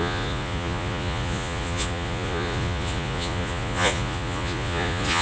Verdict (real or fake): fake